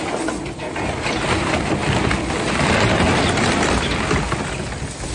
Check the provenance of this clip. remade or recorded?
recorded